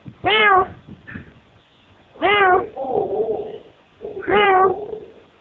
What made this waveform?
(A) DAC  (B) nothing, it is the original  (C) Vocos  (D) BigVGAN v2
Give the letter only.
C